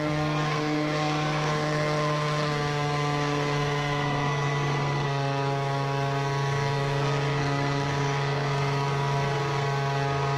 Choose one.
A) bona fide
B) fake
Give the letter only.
B